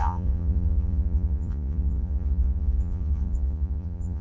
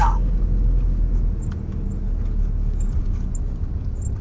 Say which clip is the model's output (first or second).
first